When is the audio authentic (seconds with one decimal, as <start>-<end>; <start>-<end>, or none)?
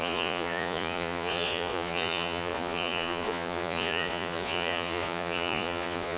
none